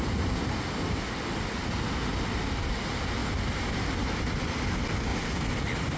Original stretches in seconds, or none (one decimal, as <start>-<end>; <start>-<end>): 0.0-3.2; 3.9-5.1